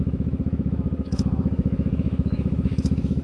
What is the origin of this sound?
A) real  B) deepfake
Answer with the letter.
B